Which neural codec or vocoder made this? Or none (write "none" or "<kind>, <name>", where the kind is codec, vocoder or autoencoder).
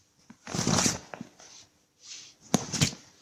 none